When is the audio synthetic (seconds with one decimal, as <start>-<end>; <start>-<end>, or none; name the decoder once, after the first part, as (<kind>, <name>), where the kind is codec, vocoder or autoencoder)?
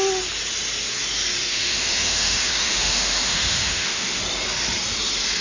1.4-4.2 (autoencoder, DAC-VAE)